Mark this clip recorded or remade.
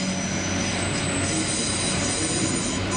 recorded